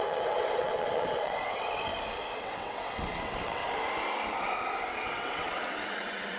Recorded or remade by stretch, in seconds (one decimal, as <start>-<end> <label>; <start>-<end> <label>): 0.0-1.9 remade; 1.9-2.4 recorded; 2.4-3.6 remade; 3.6-5.1 recorded; 5.1-6.4 remade